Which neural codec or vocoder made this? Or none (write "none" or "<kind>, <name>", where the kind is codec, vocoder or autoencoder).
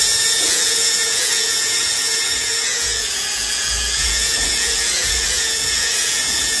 vocoder, Vocos